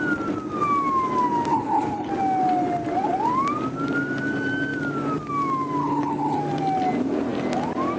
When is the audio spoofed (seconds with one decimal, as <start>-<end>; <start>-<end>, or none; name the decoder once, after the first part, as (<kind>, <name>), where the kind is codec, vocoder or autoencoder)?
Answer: 1.5-2.1 (codec, HILCodec); 5.8-6.4